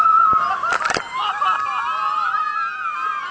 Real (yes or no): yes